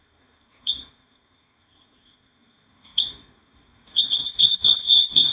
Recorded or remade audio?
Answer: remade